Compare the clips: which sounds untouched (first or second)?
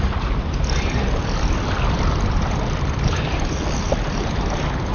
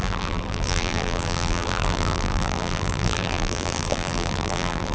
first